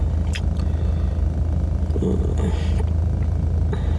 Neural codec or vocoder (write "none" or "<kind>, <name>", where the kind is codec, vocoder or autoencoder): none